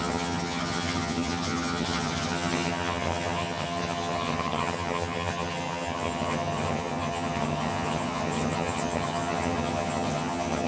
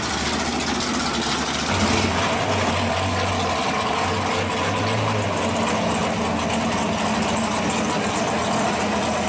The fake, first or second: first